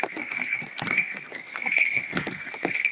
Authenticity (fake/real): fake